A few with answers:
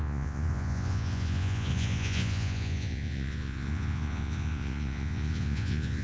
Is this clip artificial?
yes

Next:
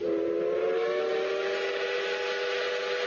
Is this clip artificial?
no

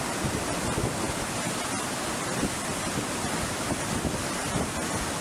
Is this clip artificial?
no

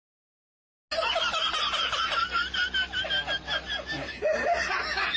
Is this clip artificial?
no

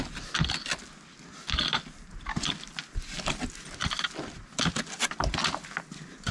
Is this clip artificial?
no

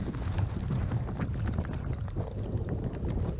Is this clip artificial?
no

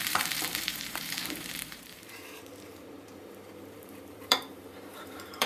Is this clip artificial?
yes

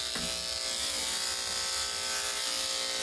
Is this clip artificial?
no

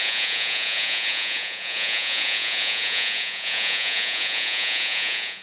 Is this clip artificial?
yes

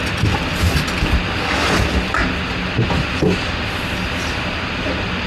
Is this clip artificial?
no